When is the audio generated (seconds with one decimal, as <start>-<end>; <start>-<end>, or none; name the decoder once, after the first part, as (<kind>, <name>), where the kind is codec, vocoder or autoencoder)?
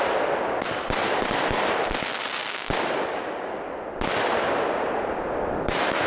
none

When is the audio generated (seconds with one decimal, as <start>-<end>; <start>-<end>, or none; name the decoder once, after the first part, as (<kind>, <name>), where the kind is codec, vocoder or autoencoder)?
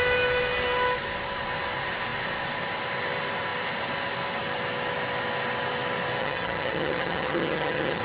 6.2-8.0 (vocoder, HiFi-GAN)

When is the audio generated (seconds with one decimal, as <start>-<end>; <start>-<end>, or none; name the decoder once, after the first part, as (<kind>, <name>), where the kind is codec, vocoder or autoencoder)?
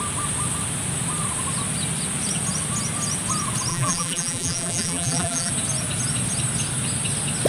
3.7-5.5 (vocoder, BigVGAN v2)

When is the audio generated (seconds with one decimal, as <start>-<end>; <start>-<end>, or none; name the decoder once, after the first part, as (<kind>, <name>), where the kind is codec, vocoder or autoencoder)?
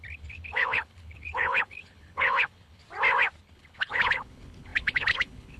0.0-2.8 (codec, HILCodec); 3.4-5.6